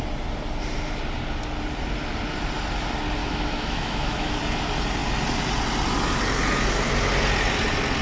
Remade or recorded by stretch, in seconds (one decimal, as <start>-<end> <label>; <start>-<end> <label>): 0.0-3.2 recorded; 3.2-4.3 remade; 4.3-8.0 recorded